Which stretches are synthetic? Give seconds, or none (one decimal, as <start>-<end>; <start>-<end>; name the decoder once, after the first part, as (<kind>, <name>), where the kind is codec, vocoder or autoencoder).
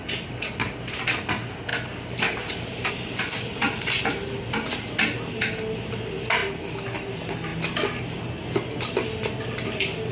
1.7-2.9 (vocoder, BigVGAN v2); 7.5-8.2